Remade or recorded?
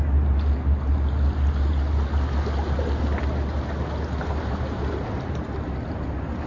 recorded